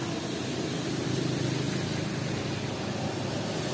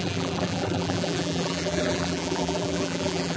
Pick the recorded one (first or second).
first